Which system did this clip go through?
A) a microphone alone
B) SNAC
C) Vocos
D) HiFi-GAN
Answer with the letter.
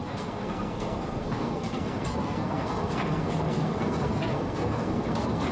B